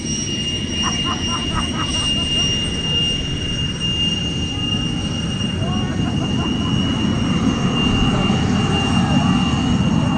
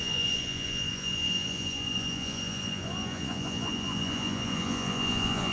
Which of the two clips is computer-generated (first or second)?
second